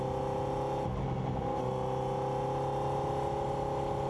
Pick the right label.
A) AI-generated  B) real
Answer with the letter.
B